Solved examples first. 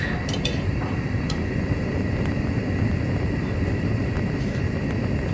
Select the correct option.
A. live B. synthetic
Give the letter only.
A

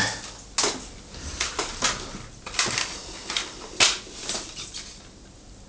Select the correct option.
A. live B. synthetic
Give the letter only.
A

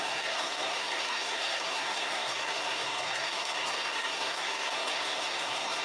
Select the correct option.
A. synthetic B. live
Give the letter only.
A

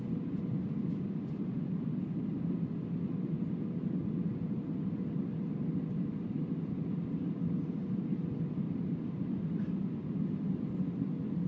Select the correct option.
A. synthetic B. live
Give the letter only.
B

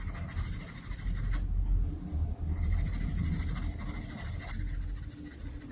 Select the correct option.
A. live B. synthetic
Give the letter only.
A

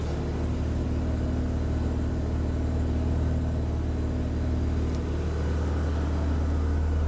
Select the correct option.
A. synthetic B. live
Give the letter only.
B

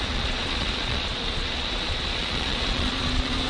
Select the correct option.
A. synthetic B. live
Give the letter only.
A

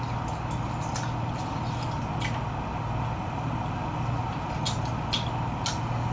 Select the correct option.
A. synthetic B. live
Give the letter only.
B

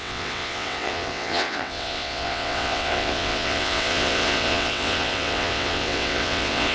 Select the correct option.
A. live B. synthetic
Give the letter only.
B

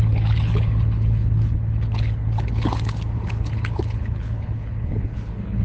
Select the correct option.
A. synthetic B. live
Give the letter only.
A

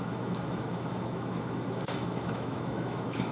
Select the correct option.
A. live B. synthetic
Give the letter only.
B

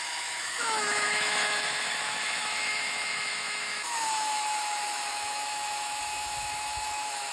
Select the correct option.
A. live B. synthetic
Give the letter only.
B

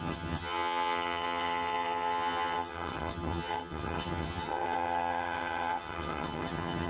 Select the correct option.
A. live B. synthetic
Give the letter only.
B